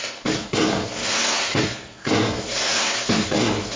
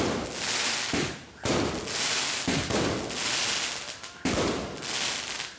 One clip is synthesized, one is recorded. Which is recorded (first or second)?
second